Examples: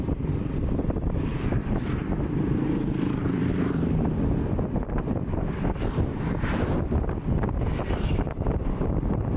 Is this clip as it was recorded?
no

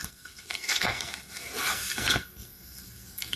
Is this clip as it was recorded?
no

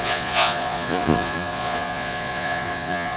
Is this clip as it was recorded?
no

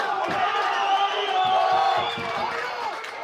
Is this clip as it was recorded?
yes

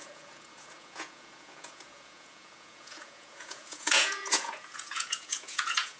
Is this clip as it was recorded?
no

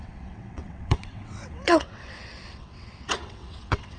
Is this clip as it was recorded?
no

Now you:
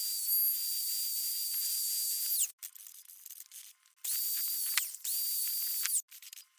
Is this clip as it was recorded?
yes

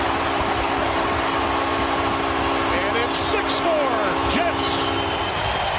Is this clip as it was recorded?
yes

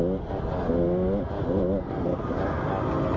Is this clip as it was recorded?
yes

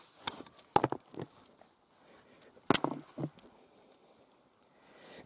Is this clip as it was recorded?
yes